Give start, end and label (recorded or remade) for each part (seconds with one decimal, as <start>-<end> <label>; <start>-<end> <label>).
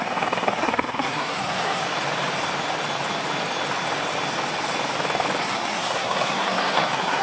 0.0-1.8 remade; 1.8-5.4 recorded; 5.4-7.2 remade